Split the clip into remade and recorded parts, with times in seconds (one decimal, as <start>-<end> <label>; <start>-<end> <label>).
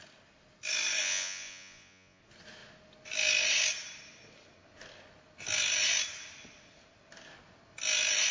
0.0-1.0 recorded; 1.0-2.2 remade; 2.2-8.3 recorded